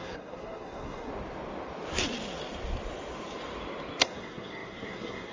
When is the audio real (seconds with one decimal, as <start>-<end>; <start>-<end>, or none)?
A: 1.1-4.0